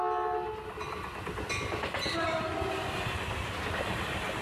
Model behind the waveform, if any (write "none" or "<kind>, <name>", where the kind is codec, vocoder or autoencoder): none